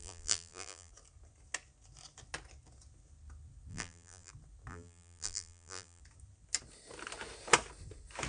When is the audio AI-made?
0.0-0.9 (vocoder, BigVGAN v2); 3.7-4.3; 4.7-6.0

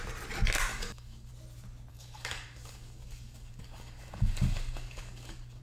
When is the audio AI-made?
0.7-1.3 (codec, DAC); 1.9-5.6

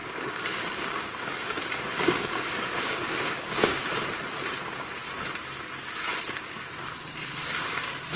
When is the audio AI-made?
0.0-3.8 (codec, DAC)

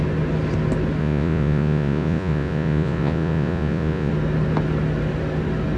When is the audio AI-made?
1.0-4.1 (vocoder, Vocos)

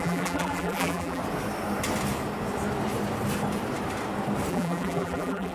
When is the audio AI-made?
0.0-1.2 (vocoder, BigVGAN v2); 4.5-5.5

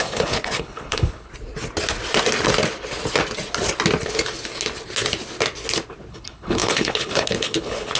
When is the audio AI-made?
0.0-1.3 (codec, HILCodec); 6.1-8.0

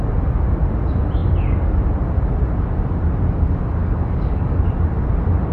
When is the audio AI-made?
3.8-4.6 (codec, DAC)

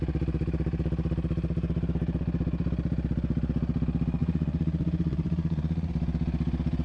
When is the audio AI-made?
4.2-5.9 (vocoder, Vocos)